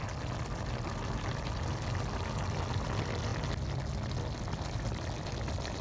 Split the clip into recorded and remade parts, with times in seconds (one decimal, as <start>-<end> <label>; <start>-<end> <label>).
0.0-5.8 recorded